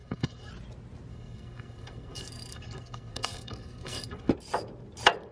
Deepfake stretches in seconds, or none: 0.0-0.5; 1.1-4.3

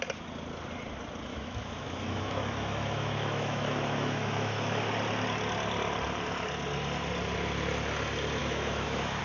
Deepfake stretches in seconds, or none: 1.3-4.8; 8.4-9.2